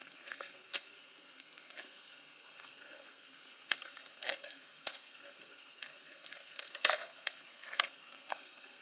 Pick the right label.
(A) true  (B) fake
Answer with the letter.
B